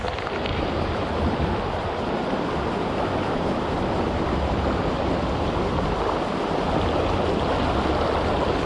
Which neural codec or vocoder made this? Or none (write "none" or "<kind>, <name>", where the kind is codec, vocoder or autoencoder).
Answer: none